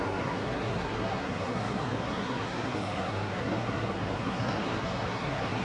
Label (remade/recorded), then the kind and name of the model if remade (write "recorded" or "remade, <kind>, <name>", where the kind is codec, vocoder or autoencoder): remade, codec, SNAC